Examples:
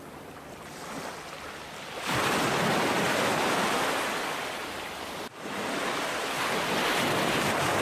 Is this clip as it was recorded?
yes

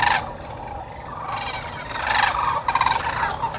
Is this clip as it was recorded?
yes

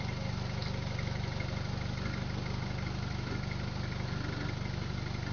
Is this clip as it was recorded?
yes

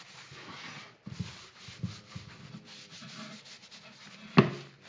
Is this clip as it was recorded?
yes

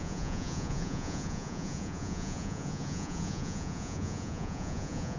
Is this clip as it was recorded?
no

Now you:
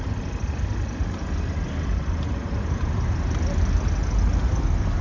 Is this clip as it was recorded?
yes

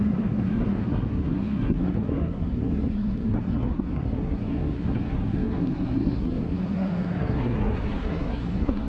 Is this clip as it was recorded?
no